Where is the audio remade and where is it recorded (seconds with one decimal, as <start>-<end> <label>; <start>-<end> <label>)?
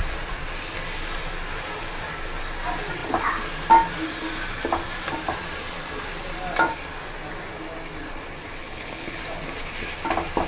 0.0-8.6 recorded; 8.6-9.2 remade; 9.2-10.5 recorded